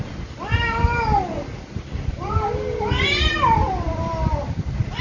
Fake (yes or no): no